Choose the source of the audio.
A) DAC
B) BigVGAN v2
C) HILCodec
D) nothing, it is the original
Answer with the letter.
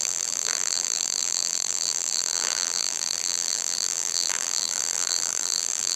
B